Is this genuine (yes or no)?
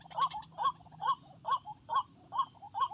yes